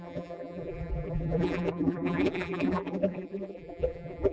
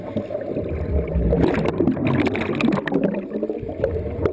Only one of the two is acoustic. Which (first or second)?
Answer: second